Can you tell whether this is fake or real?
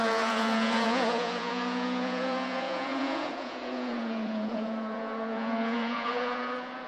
fake